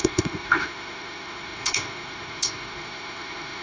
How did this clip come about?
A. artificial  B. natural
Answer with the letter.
A